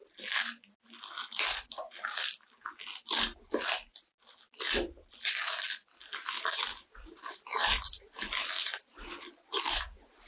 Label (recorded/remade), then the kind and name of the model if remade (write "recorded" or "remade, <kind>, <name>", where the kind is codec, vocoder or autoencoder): recorded